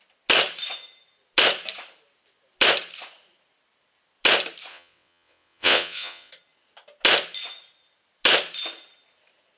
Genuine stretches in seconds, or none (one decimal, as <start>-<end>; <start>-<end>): 0.0-4.7; 6.3-9.6